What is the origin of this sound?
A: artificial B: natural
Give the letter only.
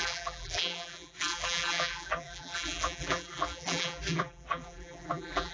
A